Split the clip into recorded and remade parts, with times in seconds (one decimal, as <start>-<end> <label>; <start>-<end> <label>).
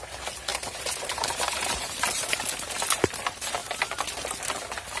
0.0-0.5 recorded; 0.5-2.4 remade; 2.4-5.0 recorded